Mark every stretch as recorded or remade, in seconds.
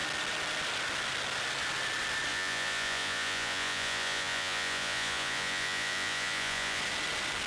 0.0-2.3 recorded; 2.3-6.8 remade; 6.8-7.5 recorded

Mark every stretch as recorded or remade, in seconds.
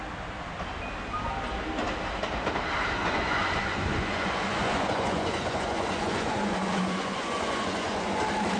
0.0-3.0 recorded; 3.0-8.2 remade; 8.2-8.6 recorded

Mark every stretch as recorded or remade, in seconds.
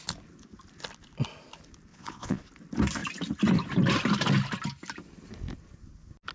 0.0-1.9 recorded; 1.9-2.4 remade; 2.4-6.3 recorded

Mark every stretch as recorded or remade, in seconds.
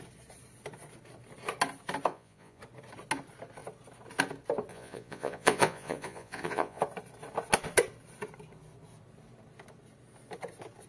0.0-2.1 recorded; 2.1-2.6 remade; 2.6-4.7 recorded; 4.7-6.8 remade; 6.8-10.9 recorded